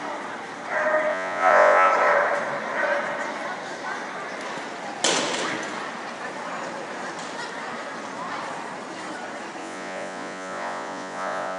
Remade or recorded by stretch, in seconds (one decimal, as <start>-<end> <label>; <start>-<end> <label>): 0.0-1.1 recorded; 1.1-1.9 remade; 1.9-9.6 recorded; 9.6-11.6 remade